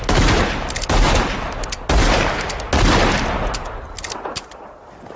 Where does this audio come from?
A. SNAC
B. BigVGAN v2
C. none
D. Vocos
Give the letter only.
C